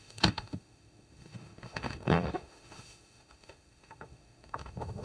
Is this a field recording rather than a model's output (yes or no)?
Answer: no